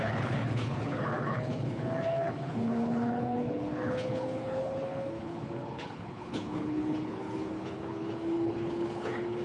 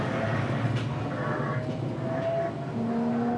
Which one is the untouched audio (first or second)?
second